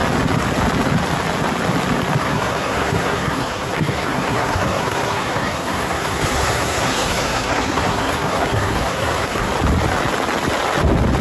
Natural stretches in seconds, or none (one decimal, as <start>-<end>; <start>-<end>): 0.0-2.2; 9.5-11.2